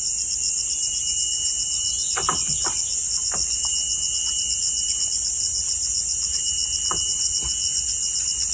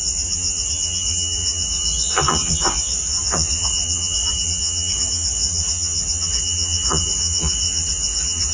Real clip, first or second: first